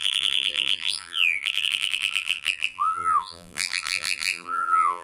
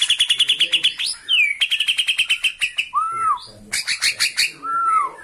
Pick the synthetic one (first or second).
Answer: first